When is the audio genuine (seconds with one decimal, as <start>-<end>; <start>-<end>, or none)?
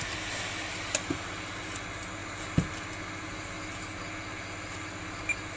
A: 0.0-5.6